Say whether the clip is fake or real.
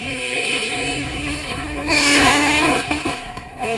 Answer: fake